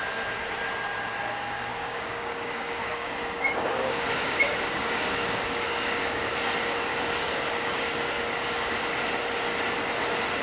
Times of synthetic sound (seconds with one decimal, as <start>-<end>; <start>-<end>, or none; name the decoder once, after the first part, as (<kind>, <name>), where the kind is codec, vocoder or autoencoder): 1.7-6.3 (codec, DAC); 6.9-8.7